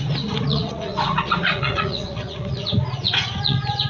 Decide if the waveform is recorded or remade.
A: remade